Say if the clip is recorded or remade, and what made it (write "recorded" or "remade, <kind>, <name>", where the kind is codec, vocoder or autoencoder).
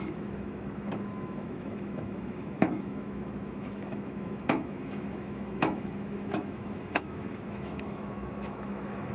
remade, autoencoder, DAC-VAE